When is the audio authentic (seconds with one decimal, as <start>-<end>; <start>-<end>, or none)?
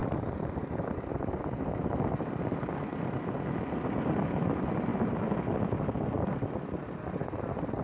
0.0-7.8